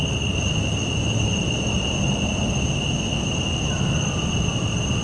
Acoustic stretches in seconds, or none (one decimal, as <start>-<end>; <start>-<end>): 0.0-5.0